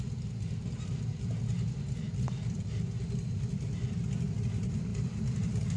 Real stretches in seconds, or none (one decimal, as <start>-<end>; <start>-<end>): 0.0-5.8